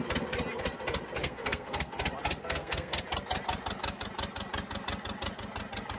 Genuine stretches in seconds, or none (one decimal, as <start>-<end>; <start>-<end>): 0.0-1.2; 1.9-2.4; 3.0-6.0